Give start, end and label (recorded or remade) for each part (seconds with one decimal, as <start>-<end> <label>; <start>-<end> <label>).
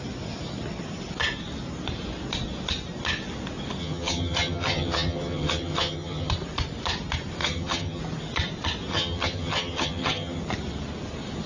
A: 0.0-3.8 recorded; 3.8-6.3 remade; 6.3-7.4 recorded; 7.4-8.0 remade; 8.0-8.9 recorded; 8.9-10.4 remade; 10.4-11.5 recorded